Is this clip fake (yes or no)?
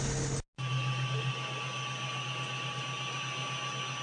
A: no